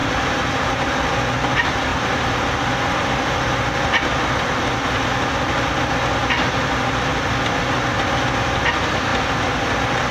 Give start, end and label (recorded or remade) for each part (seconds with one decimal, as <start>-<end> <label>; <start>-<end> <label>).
0.0-1.1 remade; 1.1-1.9 recorded; 1.9-2.6 remade; 2.6-10.1 recorded